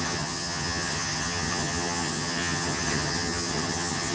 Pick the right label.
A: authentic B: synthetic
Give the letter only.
B